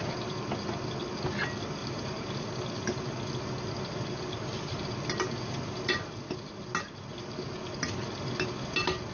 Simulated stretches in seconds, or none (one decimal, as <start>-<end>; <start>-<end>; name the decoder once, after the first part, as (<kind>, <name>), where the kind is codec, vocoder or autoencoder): 1.8-2.4 (vocoder, BigVGAN v2)